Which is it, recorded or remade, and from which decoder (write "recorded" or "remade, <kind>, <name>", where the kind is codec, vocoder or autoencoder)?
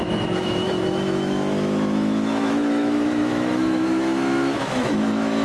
remade, autoencoder, DAC-VAE